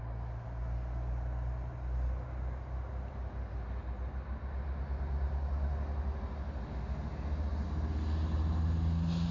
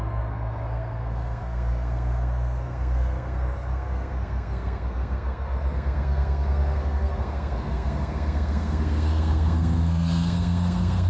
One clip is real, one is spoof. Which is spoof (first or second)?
second